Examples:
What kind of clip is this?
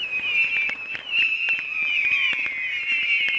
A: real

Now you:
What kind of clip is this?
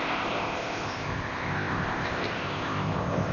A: fake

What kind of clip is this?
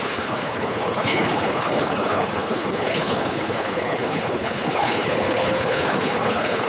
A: fake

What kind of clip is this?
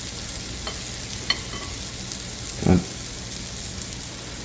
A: real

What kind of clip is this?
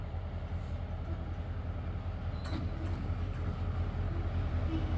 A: real